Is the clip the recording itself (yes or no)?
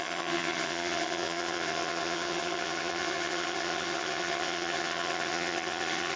no